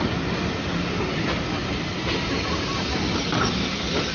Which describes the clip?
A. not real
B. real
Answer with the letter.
B